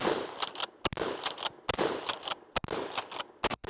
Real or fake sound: real